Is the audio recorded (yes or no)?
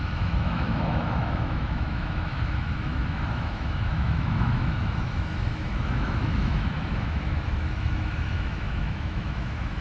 no